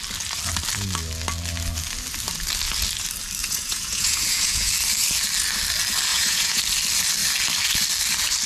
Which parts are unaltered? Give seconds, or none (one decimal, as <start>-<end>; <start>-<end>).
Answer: 0.0-3.4; 4.7-6.1; 6.6-8.5